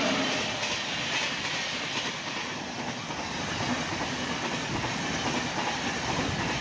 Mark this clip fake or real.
real